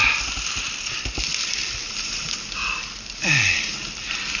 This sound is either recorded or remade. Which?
recorded